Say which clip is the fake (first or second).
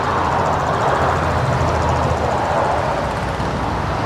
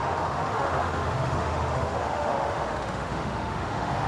second